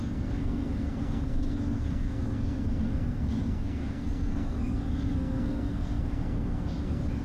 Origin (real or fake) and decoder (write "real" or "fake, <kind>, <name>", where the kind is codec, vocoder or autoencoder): fake, codec, SNAC